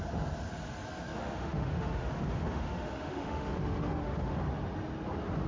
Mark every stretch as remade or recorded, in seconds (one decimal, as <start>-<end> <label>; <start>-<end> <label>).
0.0-1.1 recorded; 1.1-4.4 remade; 4.4-5.5 recorded